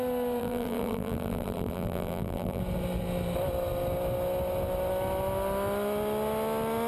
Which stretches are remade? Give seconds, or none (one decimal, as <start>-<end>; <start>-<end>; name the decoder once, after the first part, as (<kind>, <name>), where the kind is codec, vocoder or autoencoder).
0.4-2.6 (vocoder, BigVGAN v2)